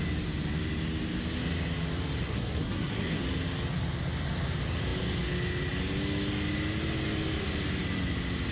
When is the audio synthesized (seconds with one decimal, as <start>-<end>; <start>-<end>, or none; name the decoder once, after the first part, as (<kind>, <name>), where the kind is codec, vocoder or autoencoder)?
2.2-3.2 (codec, SNAC)